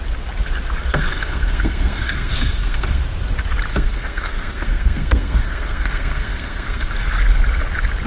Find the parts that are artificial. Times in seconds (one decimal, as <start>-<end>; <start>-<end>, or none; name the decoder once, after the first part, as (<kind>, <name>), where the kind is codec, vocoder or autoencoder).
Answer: 0.9-3.0 (codec, SNAC); 3.7-6.9